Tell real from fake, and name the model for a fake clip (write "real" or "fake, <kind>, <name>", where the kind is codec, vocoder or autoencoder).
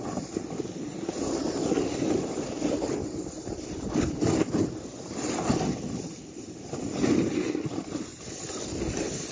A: real